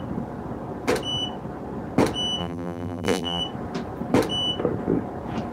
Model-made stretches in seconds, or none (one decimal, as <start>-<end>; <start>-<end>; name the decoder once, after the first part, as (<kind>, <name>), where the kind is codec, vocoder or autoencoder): 2.4-3.4 (vocoder, BigVGAN v2)